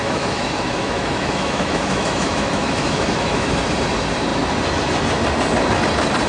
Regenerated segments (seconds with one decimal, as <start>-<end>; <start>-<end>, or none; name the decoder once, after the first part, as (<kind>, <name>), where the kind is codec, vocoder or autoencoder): 0.0-3.5 (autoencoder, DAC-VAE)